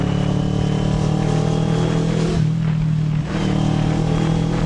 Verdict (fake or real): real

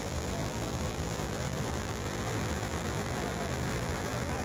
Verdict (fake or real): fake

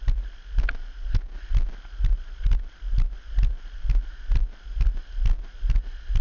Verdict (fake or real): real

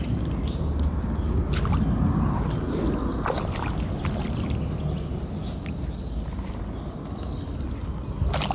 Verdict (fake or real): real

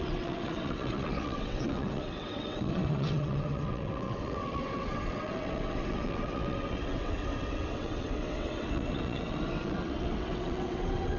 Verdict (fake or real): fake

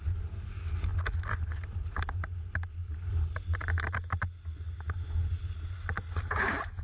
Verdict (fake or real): real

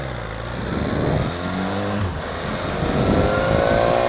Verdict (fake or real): real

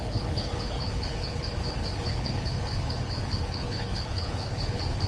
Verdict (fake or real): fake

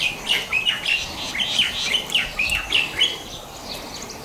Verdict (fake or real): real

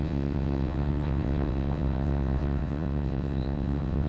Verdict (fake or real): fake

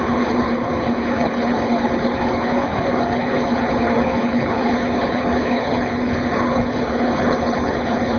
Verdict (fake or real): fake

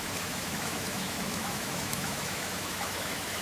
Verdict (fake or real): fake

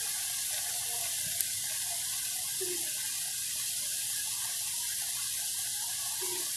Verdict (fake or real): real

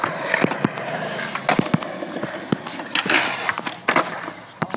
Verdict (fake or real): real